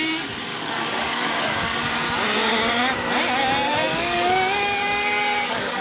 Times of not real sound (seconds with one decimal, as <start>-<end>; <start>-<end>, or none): 0.5-1.8; 3.9-5.8